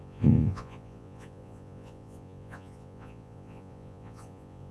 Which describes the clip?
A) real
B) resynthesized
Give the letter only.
B